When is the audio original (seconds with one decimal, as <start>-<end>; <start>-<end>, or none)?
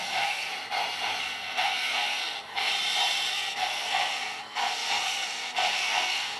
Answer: 0.5-1.2; 2.7-3.3